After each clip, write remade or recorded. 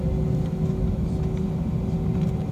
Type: recorded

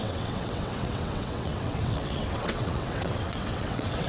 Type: remade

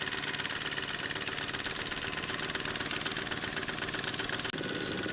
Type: recorded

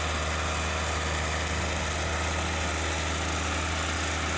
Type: recorded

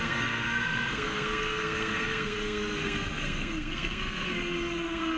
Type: remade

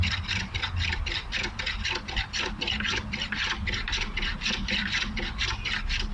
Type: remade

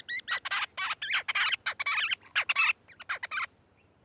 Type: recorded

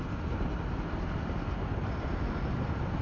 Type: recorded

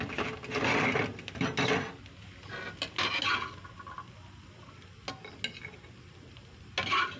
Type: recorded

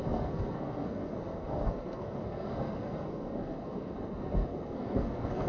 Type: remade